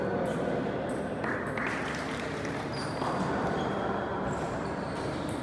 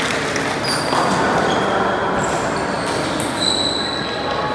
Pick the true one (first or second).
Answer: second